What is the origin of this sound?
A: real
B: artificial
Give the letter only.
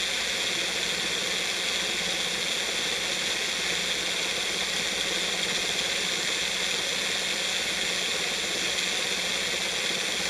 A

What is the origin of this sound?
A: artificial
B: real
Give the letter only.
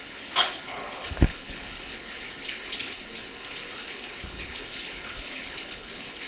A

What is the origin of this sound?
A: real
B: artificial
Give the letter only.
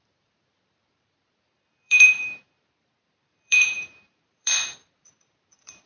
B